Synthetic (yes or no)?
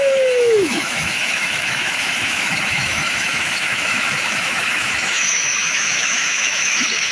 yes